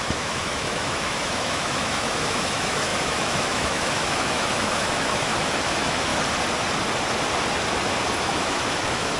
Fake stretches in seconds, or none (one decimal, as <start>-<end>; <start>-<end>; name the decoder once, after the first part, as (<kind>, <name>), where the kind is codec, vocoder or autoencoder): 0.0-6.1 (autoencoder, DAC-VAE); 8.2-9.2